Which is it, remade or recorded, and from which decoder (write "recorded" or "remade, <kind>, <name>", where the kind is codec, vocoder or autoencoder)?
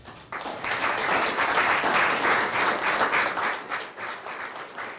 recorded